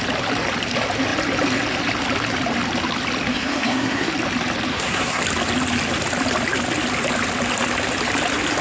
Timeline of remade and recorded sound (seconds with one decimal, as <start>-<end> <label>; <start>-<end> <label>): 0.0-3.3 recorded; 3.3-4.1 remade; 4.1-4.7 recorded; 4.7-5.2 remade; 5.2-8.6 recorded